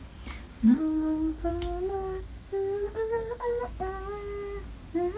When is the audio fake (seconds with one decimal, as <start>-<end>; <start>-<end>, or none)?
0.5-1.5; 1.9-3.6